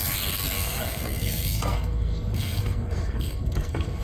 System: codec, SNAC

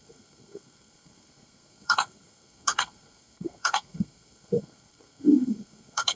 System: codec, SNAC